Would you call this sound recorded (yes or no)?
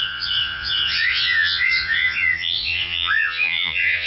no